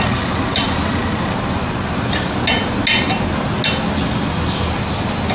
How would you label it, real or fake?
real